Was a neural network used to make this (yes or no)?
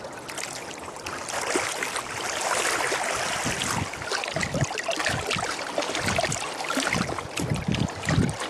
no